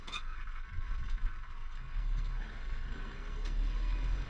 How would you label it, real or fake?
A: fake